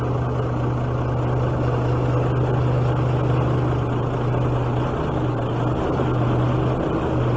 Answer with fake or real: real